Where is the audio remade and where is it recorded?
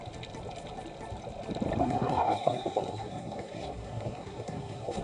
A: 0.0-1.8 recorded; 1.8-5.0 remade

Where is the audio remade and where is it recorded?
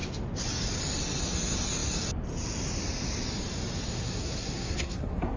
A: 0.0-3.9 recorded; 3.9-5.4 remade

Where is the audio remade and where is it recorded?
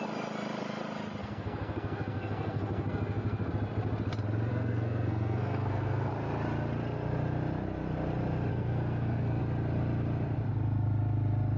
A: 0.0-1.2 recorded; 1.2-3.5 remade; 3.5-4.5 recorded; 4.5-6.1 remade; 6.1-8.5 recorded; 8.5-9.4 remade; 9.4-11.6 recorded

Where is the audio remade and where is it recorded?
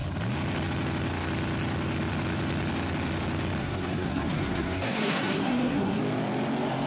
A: 0.0-3.6 recorded; 3.6-6.0 remade; 6.0-6.9 recorded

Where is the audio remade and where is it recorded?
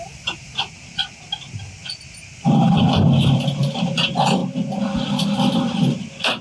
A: 0.0-6.4 recorded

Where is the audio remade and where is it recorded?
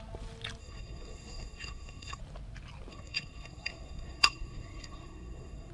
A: 0.0-0.6 recorded; 0.6-2.2 remade; 2.2-2.9 recorded; 2.9-5.7 remade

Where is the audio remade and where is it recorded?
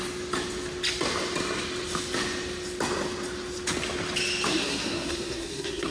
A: 0.0-4.6 recorded; 4.6-5.9 remade